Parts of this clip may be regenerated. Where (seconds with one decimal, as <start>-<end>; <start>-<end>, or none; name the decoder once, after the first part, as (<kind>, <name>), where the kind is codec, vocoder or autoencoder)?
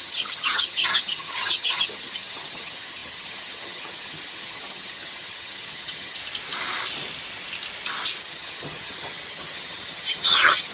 0.0-6.2 (vocoder, HiFi-GAN); 8.2-10.7